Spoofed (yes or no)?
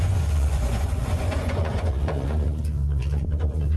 yes